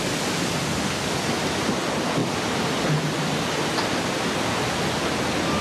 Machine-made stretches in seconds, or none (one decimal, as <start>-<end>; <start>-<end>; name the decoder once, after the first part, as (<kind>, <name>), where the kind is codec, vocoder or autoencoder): none